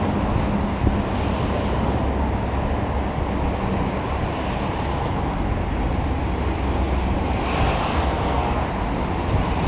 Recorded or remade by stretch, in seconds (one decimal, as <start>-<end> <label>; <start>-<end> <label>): 0.0-7.9 recorded; 7.9-8.6 remade; 8.6-9.7 recorded